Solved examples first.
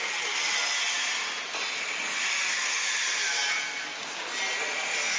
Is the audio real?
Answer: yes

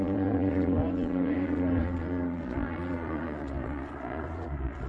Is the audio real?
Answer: no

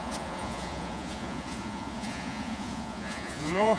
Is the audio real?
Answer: no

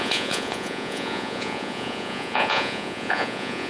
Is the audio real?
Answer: no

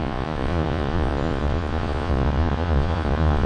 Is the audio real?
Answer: no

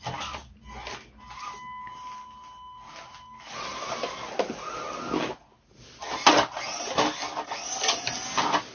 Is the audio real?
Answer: yes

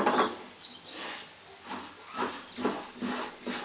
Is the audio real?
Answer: yes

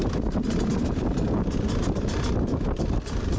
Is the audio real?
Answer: yes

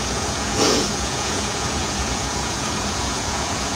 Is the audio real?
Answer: no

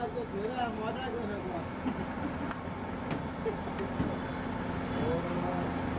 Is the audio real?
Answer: yes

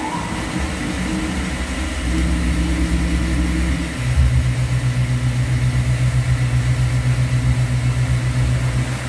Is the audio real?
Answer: yes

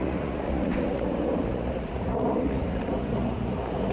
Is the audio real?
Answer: no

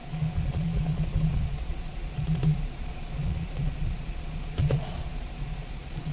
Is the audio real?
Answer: no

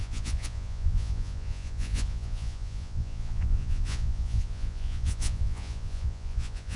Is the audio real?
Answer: no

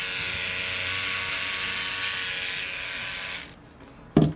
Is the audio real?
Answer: yes